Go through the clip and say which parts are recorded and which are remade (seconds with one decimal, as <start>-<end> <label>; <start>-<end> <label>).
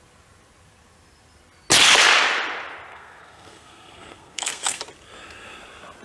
0.0-2.9 recorded; 2.9-4.8 remade; 4.8-6.0 recorded